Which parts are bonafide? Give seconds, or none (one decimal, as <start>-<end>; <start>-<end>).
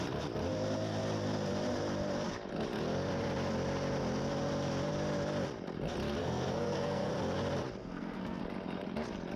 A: 0.0-6.2; 7.1-7.8; 8.4-9.4